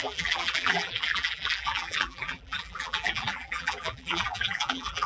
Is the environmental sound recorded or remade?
remade